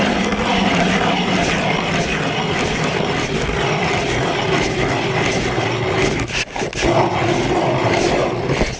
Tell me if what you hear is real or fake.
real